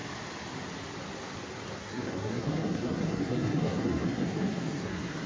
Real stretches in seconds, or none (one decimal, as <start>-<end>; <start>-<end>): 0.0-1.8

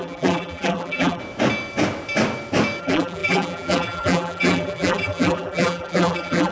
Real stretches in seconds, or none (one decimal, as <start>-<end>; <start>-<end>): 1.2-2.8